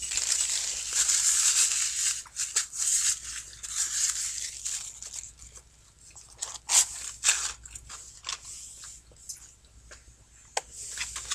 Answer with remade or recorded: recorded